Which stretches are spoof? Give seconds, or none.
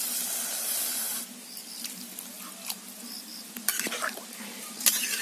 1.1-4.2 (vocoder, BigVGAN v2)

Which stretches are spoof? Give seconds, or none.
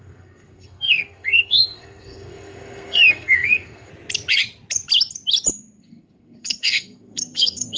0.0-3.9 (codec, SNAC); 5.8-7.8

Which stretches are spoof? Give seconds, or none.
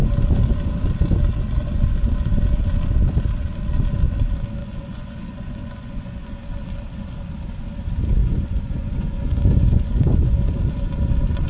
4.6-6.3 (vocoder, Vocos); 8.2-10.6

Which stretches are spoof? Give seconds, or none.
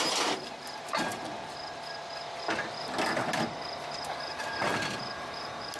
none